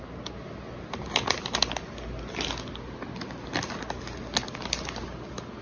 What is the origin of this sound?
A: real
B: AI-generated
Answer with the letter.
A